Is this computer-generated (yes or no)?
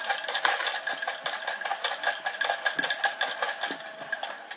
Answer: no